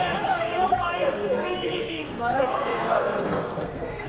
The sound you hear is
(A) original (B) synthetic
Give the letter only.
B